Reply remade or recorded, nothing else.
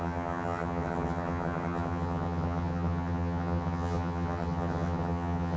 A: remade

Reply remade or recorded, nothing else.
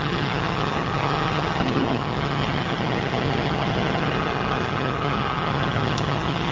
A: remade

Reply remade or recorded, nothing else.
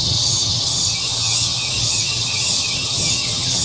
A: remade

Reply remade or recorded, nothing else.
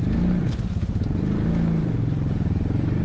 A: recorded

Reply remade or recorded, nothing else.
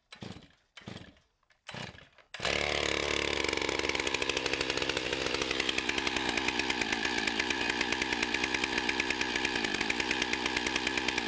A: recorded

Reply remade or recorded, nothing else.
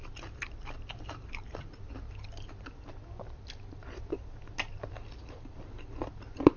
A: recorded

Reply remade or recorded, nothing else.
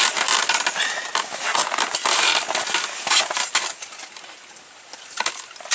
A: recorded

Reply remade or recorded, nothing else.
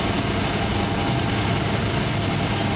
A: recorded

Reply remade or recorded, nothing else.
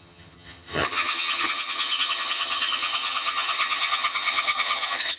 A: remade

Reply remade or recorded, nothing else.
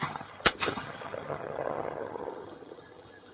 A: remade